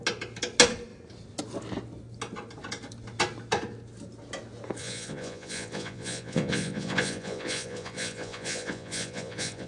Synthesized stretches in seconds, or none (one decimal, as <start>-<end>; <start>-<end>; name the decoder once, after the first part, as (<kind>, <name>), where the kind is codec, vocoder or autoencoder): 4.8-9.7 (vocoder, Vocos)